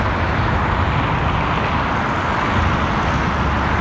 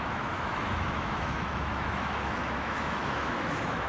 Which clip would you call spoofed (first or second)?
second